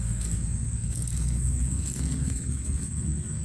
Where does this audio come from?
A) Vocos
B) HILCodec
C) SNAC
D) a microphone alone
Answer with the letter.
C